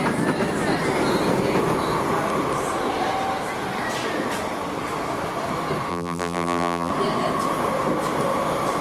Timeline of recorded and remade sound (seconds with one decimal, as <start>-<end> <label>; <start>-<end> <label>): 0.0-5.9 recorded; 5.9-6.9 remade; 6.9-8.8 recorded